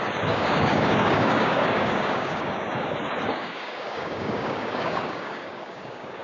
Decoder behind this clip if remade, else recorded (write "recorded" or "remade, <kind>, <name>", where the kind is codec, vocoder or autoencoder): remade, codec, DAC